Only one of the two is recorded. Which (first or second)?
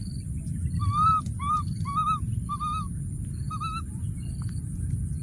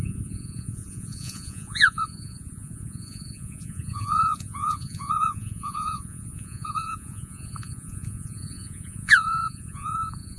first